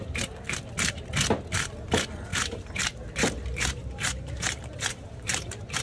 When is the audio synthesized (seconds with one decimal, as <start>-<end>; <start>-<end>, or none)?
2.3-5.8